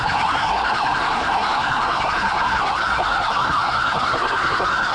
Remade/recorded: remade